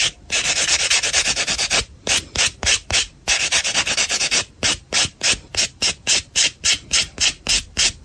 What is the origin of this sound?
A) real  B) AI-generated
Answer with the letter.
B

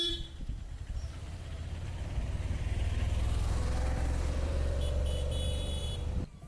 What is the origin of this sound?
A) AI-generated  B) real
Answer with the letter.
A